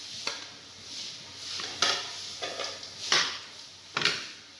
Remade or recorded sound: recorded